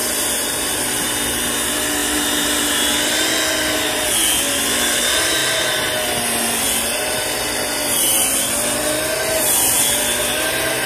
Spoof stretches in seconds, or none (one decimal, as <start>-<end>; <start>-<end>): 0.0-1.1